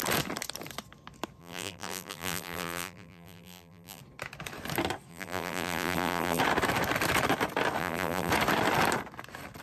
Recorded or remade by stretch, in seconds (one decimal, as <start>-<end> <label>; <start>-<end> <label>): 0.0-1.4 recorded; 1.4-4.0 remade; 4.0-5.1 recorded; 5.1-6.4 remade; 6.4-7.8 recorded; 7.8-8.3 remade; 8.3-9.6 recorded